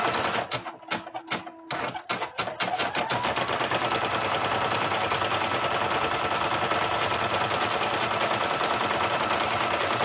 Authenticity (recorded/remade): recorded